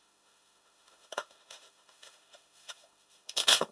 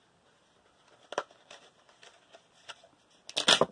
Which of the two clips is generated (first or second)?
first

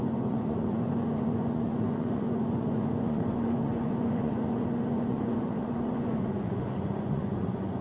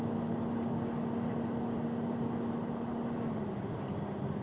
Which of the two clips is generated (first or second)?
first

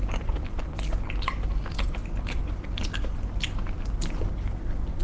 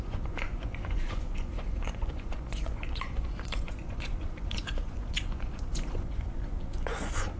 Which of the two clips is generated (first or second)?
second